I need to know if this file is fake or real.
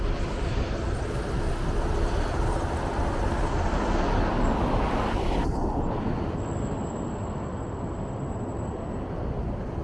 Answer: real